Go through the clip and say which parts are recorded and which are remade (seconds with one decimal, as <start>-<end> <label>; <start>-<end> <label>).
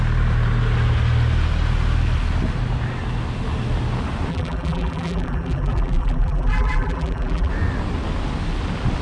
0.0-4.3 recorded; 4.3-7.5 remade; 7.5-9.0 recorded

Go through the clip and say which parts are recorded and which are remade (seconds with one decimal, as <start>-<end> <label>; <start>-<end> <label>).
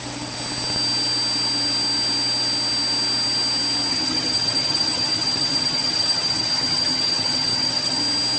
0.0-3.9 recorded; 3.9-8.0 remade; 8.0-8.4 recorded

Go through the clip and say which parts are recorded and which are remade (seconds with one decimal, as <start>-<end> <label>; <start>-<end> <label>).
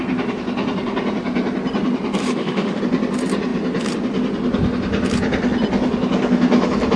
0.0-2.2 recorded; 2.2-2.8 remade; 2.8-7.0 recorded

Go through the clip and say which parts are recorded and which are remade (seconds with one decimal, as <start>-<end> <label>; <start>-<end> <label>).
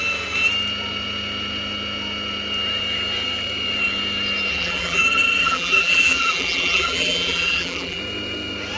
0.0-4.5 recorded; 4.5-5.0 remade; 5.0-5.4 recorded; 5.4-8.0 remade; 8.0-8.8 recorded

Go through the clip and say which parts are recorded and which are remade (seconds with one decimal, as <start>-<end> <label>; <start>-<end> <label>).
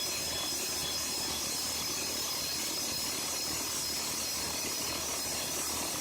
0.0-6.0 recorded